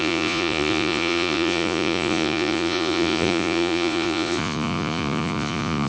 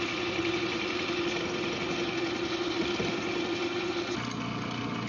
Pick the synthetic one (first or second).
first